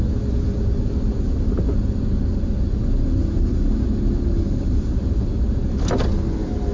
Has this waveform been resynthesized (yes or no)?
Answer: no